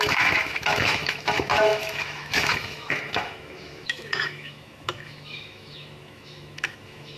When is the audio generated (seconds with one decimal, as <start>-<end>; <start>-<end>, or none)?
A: 0.0-7.2